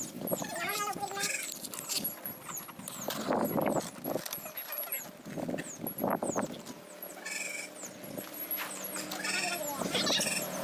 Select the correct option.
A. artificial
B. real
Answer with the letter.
B